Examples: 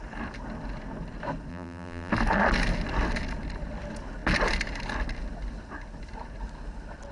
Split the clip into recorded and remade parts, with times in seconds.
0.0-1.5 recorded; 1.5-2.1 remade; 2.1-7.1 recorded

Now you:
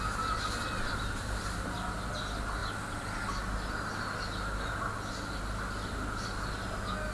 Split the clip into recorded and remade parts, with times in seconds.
0.0-7.1 recorded

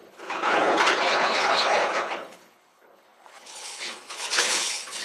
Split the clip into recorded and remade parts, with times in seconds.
0.0-5.0 remade

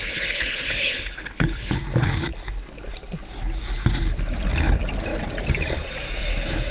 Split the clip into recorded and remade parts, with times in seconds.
0.0-1.8 remade; 1.8-6.7 recorded

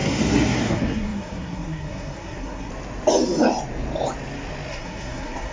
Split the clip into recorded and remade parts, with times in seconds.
0.0-2.7 remade; 2.7-4.7 recorded; 4.7-5.5 remade

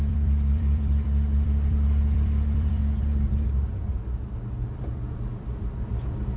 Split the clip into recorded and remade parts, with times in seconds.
0.0-2.8 remade; 2.8-4.6 recorded; 4.6-6.4 remade

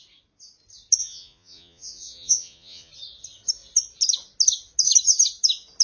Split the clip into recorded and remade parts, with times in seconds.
0.0-1.0 recorded; 1.0-2.9 remade; 2.9-5.8 recorded

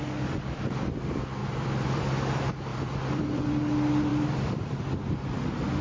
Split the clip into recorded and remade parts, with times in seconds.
0.0-1.4 recorded; 1.4-2.0 remade; 2.0-2.7 recorded; 2.7-3.5 remade; 3.5-4.1 recorded; 4.1-4.7 remade; 4.7-5.8 recorded